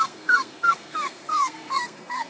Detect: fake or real fake